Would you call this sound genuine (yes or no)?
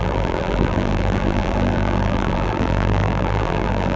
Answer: no